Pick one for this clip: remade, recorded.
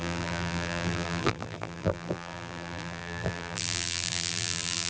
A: remade